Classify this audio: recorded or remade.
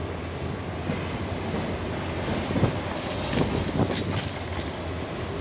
recorded